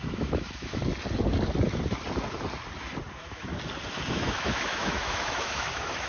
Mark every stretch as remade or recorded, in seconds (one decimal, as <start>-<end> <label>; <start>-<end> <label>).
0.0-0.8 remade; 0.8-3.1 recorded; 3.1-3.5 remade; 3.5-4.1 recorded; 4.1-6.1 remade